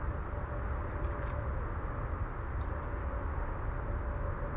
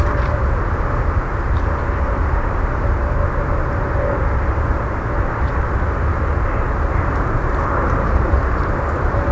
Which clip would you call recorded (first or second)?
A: first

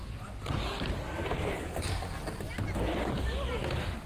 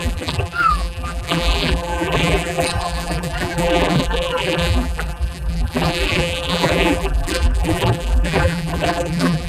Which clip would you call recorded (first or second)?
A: first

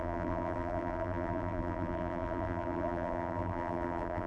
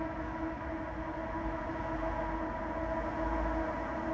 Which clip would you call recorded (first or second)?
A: second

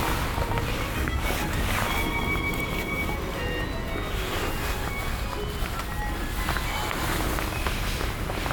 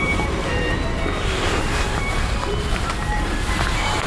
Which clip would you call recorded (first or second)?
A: first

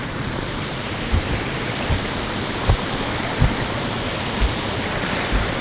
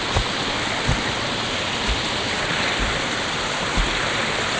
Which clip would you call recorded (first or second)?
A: second